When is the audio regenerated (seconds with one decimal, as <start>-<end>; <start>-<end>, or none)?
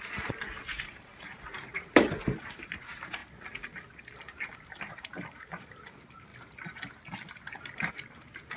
0.0-3.2; 4.9-6.3; 7.9-8.6